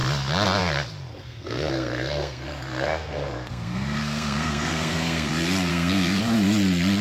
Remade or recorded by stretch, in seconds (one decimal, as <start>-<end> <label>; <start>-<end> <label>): 0.0-1.1 recorded; 1.1-5.3 remade; 5.3-5.7 recorded; 5.7-6.2 remade; 6.2-7.0 recorded